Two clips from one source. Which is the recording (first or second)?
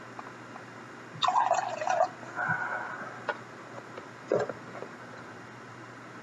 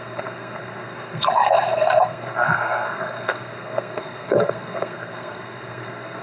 first